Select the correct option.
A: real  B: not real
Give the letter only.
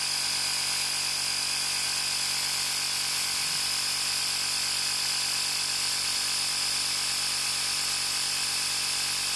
A